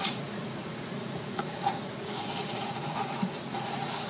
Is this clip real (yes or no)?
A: no